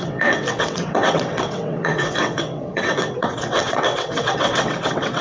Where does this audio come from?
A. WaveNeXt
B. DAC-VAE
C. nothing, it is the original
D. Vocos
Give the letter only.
A